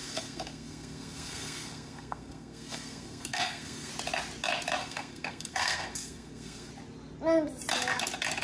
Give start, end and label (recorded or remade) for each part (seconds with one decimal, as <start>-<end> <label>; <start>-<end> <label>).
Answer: 0.0-3.9 remade; 3.9-4.8 recorded; 4.8-6.7 remade; 6.7-8.4 recorded